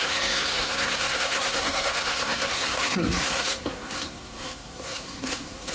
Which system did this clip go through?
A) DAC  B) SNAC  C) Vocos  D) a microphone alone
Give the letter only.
B